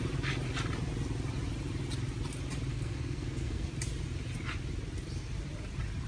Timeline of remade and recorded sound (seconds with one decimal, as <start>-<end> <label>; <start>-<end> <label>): 0.0-2.7 recorded; 2.7-3.7 remade; 3.7-6.1 recorded